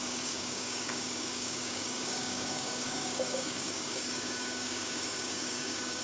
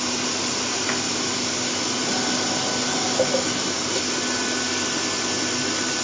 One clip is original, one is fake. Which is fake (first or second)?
first